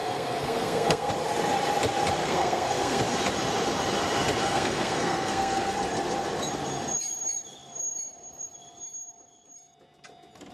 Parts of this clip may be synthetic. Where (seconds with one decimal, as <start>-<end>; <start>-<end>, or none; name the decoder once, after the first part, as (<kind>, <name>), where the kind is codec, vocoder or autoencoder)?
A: 0.0-1.1 (codec, SNAC); 2.2-3.0; 4.4-5.8